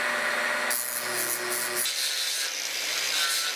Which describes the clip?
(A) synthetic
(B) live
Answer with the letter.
B